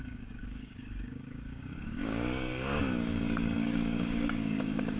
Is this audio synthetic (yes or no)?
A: yes